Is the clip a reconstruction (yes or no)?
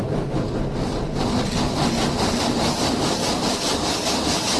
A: no